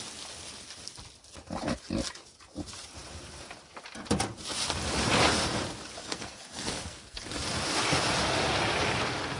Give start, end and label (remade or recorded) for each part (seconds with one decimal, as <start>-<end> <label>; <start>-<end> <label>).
0.0-6.0 recorded; 6.0-7.2 remade; 7.2-9.4 recorded